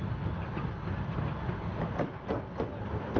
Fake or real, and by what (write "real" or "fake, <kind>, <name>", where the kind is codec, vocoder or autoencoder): real